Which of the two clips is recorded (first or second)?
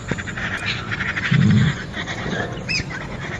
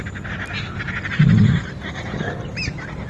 second